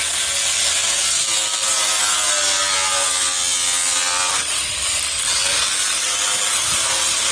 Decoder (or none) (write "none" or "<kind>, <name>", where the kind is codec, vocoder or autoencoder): none